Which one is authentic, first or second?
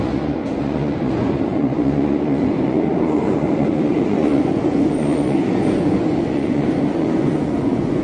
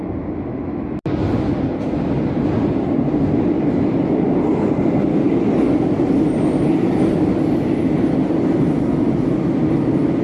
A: second